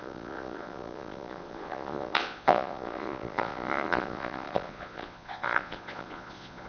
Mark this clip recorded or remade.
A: remade